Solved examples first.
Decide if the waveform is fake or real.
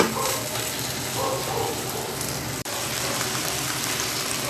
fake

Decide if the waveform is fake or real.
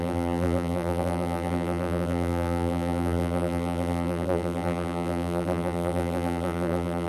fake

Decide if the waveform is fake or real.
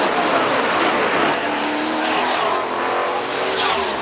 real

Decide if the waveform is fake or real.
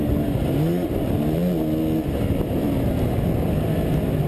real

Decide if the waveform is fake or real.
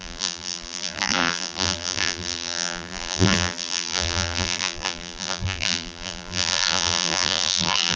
fake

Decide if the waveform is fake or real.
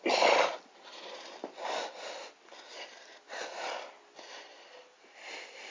real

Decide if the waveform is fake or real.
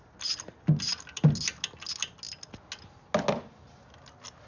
real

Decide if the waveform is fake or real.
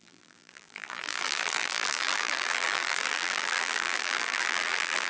fake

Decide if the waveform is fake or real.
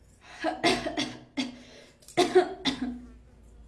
real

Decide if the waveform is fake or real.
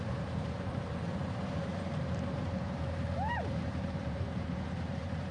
fake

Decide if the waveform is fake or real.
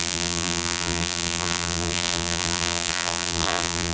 fake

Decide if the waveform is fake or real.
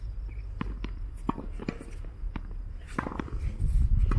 real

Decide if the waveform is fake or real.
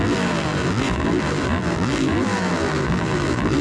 fake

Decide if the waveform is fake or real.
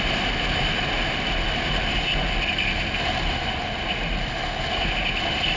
real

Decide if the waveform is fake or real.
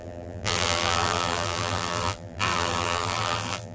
fake